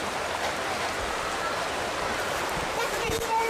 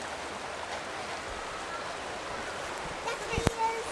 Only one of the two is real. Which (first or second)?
second